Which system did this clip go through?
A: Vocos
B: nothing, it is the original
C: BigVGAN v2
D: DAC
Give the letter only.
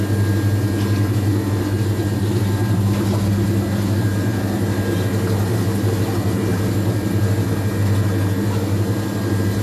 B